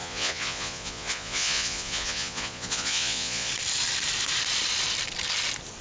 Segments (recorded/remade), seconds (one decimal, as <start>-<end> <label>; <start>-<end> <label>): 0.0-3.5 remade; 3.5-5.8 recorded